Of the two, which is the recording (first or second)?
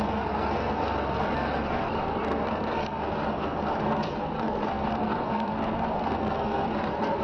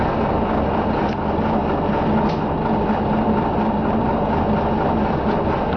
second